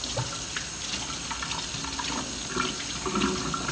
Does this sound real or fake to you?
real